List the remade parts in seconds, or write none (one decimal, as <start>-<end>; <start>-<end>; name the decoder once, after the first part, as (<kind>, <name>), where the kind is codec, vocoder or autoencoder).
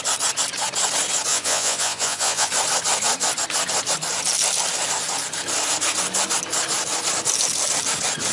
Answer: 1.3-2.5 (vocoder, Vocos)